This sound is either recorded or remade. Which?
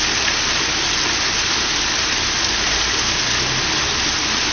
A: recorded